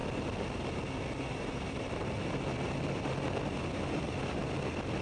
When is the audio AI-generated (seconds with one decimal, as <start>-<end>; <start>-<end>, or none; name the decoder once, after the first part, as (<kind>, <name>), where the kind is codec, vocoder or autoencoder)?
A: none